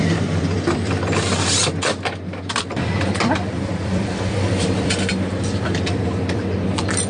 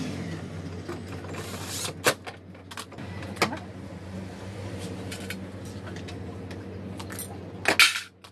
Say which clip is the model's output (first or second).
first